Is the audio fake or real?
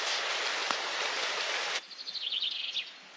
real